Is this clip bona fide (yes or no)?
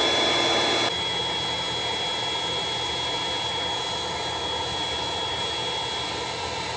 yes